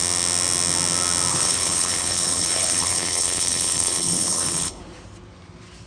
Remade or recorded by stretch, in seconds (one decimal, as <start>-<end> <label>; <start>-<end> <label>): 0.0-1.3 recorded; 1.3-4.8 remade; 4.8-5.9 recorded